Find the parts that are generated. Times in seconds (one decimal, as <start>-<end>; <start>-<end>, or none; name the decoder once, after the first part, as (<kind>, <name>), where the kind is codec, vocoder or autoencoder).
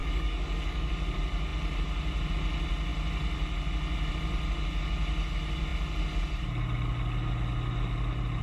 0.0-0.9 (codec, DAC)